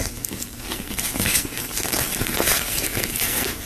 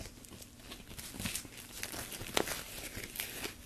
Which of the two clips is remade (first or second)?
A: first